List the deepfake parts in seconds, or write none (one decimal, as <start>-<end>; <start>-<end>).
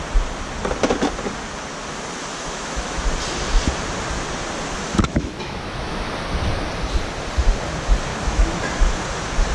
2.3-3.0; 4.9-6.1; 8.1-8.6